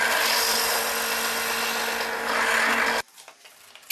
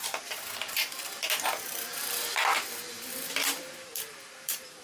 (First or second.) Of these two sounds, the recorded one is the first